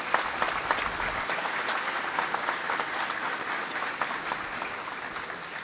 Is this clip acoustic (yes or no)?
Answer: yes